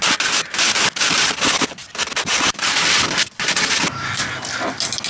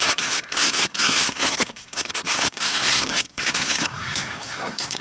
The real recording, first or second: first